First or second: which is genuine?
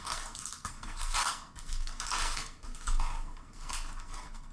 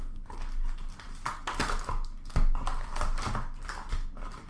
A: second